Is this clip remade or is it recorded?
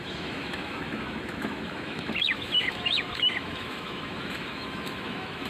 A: remade